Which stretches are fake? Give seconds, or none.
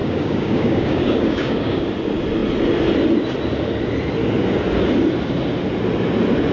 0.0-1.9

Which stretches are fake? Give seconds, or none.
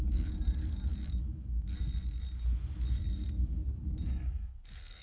0.0-1.9; 3.1-3.6; 4.1-5.0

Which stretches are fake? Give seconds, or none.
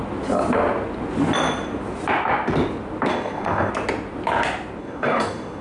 3.1-3.7; 4.8-5.6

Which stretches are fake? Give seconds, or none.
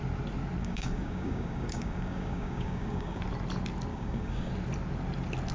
0.6-3.2; 3.9-4.5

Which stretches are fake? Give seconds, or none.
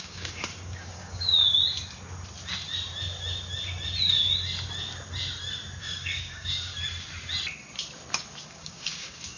0.0-1.4; 5.8-6.7; 8.4-9.4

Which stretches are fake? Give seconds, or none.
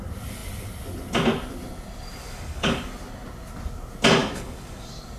2.2-2.9; 4.2-4.8